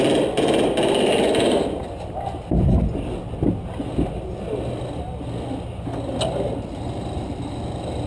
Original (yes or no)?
yes